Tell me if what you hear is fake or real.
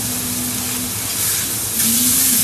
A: real